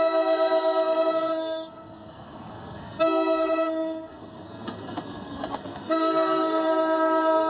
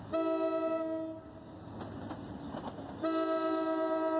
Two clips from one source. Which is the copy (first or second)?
first